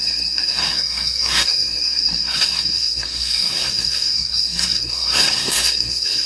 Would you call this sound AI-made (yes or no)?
yes